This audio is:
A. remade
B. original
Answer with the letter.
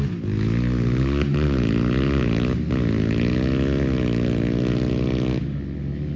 B